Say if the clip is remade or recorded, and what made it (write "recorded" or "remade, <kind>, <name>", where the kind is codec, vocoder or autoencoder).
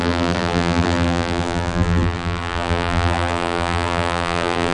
remade, vocoder, BigVGAN v2